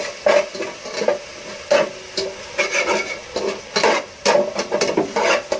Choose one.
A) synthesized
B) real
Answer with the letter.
B